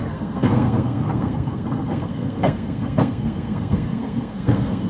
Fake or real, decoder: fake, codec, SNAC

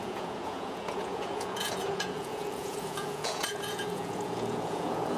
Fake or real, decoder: fake, vocoder, Vocos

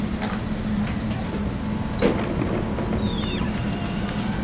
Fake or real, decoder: real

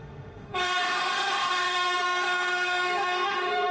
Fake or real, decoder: fake, autoencoder, DAC-VAE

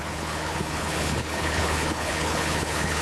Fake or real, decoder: fake, codec, HILCodec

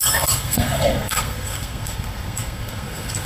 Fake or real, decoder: fake, codec, SNAC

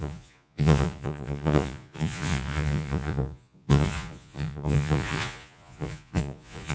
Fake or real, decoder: fake, vocoder, Vocos